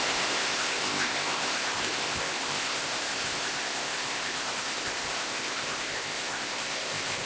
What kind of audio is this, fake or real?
fake